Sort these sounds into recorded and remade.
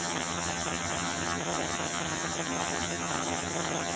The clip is remade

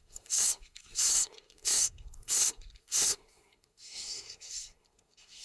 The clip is remade